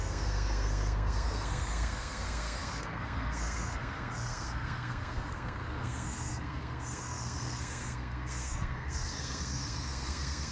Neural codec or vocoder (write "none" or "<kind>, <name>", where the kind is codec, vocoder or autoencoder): codec, SNAC